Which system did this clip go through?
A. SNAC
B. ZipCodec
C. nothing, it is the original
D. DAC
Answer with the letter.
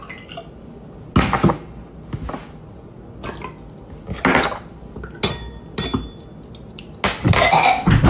C